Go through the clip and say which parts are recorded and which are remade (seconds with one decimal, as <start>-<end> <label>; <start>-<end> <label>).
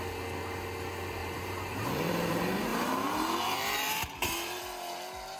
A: 0.0-1.2 recorded; 1.2-2.3 remade; 2.3-2.7 recorded; 2.7-4.6 remade; 4.6-5.4 recorded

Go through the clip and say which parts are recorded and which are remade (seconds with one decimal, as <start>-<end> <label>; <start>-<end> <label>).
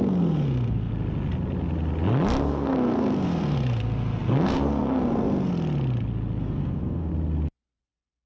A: 0.0-0.9 remade; 0.9-2.5 recorded; 2.5-5.5 remade; 5.5-6.4 recorded; 6.4-7.1 remade; 7.1-7.8 recorded; 7.8-8.3 remade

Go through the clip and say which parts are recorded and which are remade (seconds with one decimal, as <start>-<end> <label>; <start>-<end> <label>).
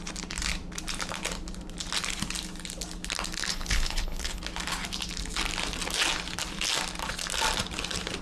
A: 0.0-3.5 recorded; 3.5-4.4 remade; 4.4-8.2 recorded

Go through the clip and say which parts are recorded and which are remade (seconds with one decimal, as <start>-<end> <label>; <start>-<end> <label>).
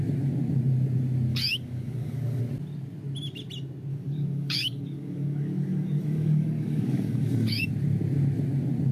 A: 0.0-1.3 recorded; 1.3-2.4 remade; 2.4-3.9 recorded; 3.9-7.7 remade; 7.7-8.9 recorded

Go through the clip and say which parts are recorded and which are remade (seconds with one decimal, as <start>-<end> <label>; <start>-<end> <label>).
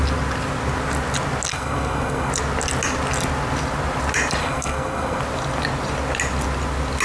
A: 0.0-1.5 recorded; 1.5-2.3 remade; 2.3-4.4 recorded; 4.4-5.2 remade; 5.2-7.0 recorded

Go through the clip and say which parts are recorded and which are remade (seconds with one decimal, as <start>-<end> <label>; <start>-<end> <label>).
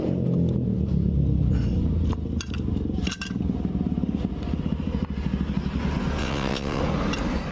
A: 0.0-6.2 recorded; 6.2-6.8 remade; 6.8-7.5 recorded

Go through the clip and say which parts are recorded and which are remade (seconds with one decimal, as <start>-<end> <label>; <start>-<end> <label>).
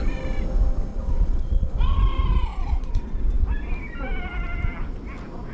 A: 0.0-0.9 recorded; 0.9-1.7 remade; 1.7-2.5 recorded; 2.5-3.2 remade; 3.2-5.5 recorded